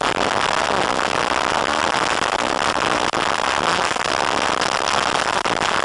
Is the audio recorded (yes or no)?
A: yes